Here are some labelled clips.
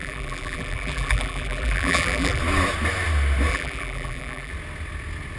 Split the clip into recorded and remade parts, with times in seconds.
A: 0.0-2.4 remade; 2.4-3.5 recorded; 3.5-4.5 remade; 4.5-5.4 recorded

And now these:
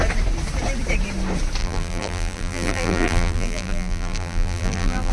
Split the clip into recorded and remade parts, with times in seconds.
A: 0.0-1.6 recorded; 1.6-5.1 remade